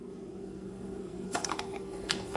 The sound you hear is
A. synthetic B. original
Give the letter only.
A